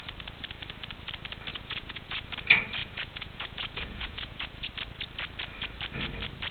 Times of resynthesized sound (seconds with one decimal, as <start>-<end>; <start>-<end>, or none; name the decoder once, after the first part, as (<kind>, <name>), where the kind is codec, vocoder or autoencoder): 1.5-2.3 (vocoder, Vocos); 2.8-4.7